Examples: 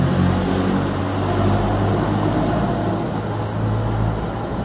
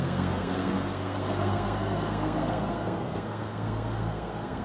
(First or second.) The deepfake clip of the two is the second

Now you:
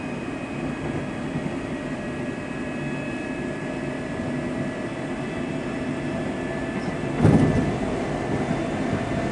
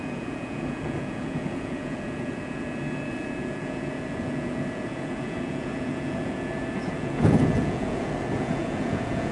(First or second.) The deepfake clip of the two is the second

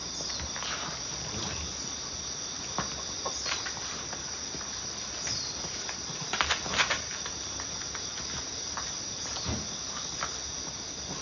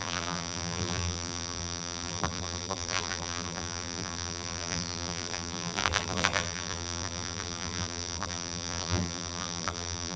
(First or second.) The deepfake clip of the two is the second